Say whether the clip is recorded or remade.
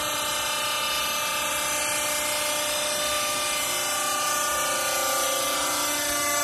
recorded